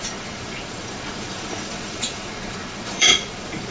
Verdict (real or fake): fake